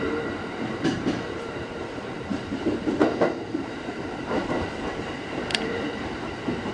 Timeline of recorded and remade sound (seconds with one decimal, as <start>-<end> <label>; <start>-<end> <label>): 0.0-6.7 remade